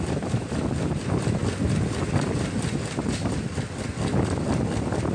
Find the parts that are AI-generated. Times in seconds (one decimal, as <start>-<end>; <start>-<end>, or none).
none